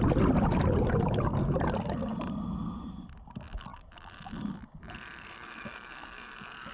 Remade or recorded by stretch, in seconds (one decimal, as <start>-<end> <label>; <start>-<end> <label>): 0.0-2.1 recorded; 2.1-2.9 remade; 2.9-3.7 recorded; 3.7-5.3 remade; 5.3-6.7 recorded

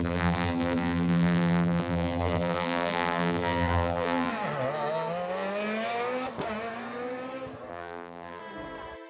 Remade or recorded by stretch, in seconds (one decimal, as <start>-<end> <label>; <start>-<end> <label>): 0.0-4.3 remade; 4.3-7.7 recorded; 7.7-8.4 remade; 8.4-9.1 recorded

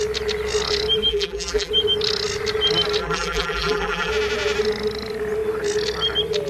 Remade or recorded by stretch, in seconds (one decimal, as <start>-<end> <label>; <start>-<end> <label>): 0.0-1.1 recorded; 1.1-1.7 remade; 1.7-3.0 recorded; 3.0-4.1 remade; 4.1-6.5 recorded